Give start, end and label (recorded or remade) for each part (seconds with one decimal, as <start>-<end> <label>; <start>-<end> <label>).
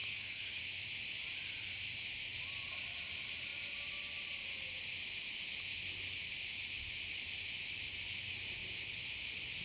0.0-0.6 remade; 0.6-9.6 recorded